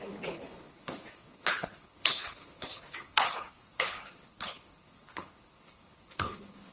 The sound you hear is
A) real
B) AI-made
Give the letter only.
B